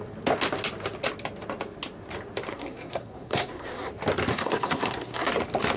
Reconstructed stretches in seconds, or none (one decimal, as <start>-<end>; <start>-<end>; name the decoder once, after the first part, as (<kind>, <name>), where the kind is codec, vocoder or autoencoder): 2.5-3.9 (codec, SNAC); 4.3-5.3